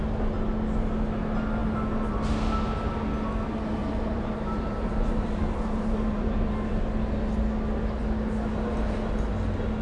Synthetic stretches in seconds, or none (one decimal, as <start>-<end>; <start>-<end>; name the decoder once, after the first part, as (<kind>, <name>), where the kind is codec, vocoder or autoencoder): 3.8-6.8 (vocoder, BigVGAN v2)